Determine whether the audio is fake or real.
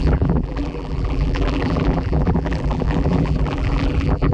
fake